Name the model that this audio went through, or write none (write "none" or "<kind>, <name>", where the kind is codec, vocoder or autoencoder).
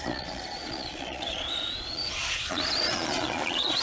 vocoder, Vocos